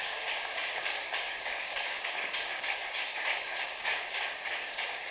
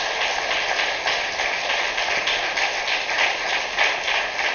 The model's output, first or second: first